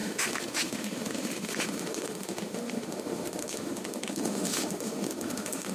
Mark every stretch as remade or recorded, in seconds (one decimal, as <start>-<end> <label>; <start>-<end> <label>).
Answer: 0.0-5.7 remade